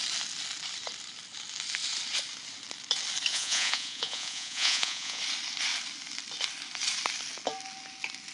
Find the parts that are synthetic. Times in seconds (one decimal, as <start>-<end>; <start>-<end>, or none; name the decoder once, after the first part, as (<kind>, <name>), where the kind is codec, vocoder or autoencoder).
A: 3.3-5.2 (vocoder, Vocos)